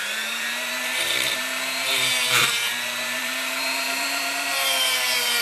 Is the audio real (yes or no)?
no